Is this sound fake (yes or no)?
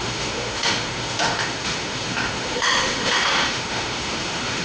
yes